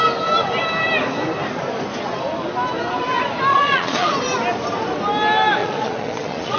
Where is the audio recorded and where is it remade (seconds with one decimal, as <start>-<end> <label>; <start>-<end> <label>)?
0.0-3.5 recorded; 3.5-4.1 remade; 4.1-5.6 recorded; 5.6-6.6 remade